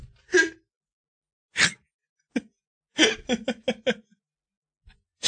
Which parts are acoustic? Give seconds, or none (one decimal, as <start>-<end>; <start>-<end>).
0.0-5.3